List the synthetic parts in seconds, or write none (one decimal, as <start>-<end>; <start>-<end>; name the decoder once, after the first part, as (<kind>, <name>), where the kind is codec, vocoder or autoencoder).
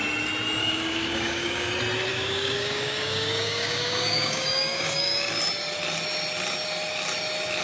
0.6-1.7 (codec, DAC); 2.1-5.3